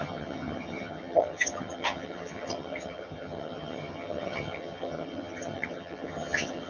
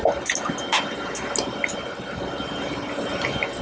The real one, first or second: second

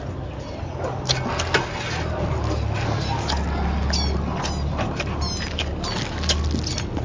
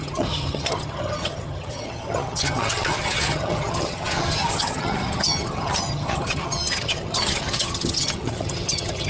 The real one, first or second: first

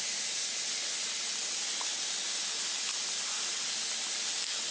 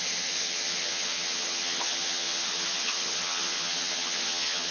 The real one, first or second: first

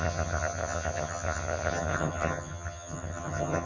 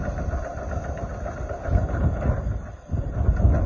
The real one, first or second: second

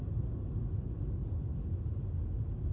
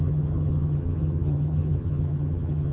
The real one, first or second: first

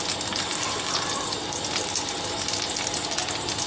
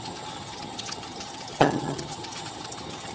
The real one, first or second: first